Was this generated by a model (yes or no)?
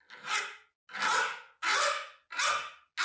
no